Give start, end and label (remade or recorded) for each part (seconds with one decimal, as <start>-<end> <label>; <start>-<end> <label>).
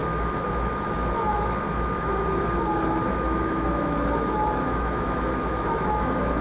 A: 0.0-6.4 remade